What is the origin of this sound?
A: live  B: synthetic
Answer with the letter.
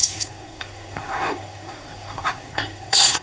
B